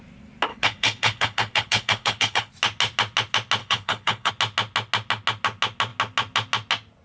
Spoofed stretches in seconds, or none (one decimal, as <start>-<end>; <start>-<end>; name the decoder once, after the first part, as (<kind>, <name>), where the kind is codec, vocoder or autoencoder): 0.5-2.5 (codec, HILCodec); 3.6-4.3